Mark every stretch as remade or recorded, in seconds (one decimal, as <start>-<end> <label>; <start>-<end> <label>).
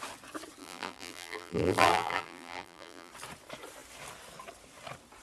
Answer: 0.0-0.6 recorded; 0.6-3.1 remade; 3.1-5.2 recorded